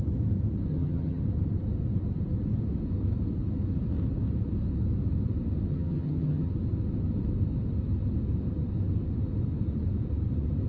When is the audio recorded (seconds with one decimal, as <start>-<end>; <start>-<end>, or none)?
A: 0.0-0.7; 1.2-5.7; 6.5-10.7